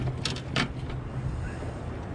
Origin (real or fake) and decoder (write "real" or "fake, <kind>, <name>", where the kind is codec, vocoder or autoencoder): real